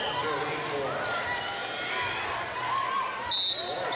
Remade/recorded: recorded